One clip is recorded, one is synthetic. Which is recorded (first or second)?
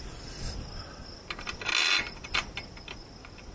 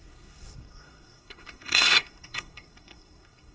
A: first